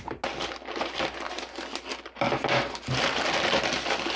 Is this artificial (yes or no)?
no